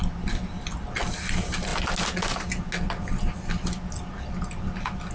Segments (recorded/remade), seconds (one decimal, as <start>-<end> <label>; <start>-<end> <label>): 0.0-5.1 recorded